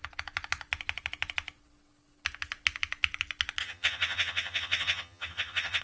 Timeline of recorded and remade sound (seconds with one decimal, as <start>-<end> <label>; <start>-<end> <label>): 0.0-3.6 recorded; 3.6-5.8 remade